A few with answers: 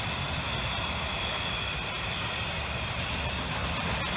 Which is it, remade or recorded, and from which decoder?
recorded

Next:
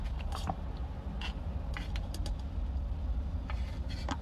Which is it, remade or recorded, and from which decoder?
recorded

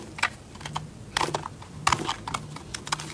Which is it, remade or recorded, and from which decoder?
recorded